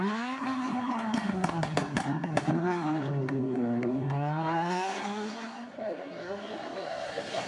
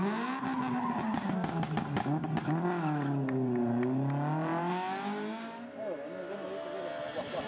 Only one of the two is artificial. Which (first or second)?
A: first